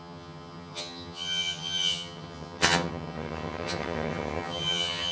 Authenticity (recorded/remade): remade